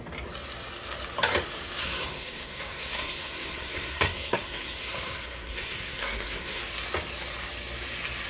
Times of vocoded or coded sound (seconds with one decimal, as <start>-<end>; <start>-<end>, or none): 1.8-6.6